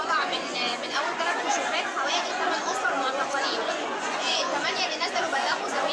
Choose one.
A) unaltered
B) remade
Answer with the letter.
B